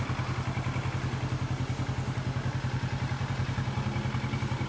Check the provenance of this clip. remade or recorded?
recorded